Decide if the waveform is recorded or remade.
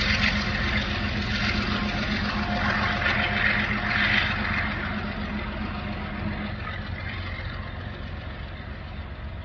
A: recorded